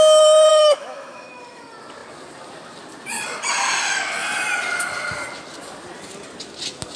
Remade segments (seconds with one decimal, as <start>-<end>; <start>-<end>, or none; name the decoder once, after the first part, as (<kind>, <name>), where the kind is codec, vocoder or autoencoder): 0.5-1.4 (autoencoder, DAC-VAE)